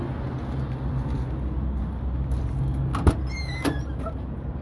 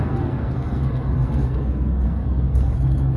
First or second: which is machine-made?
second